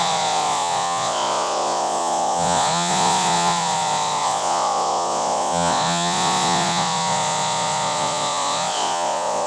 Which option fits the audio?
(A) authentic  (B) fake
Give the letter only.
B